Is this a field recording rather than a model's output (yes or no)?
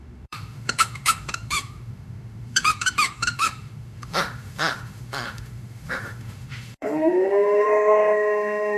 no